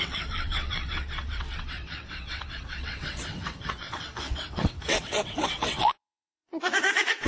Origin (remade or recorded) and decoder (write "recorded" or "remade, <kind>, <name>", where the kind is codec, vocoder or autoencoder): remade, vocoder, WaveNeXt